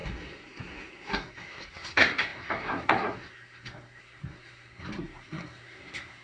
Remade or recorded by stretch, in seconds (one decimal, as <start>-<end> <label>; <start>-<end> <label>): 0.0-6.2 remade